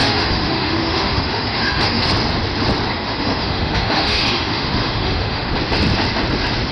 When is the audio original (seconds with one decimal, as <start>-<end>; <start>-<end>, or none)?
2.1-2.9; 5.5-6.7